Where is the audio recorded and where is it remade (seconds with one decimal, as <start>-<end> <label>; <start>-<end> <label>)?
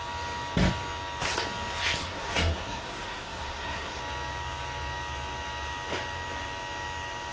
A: 0.0-2.0 recorded; 2.0-4.0 remade; 4.0-7.3 recorded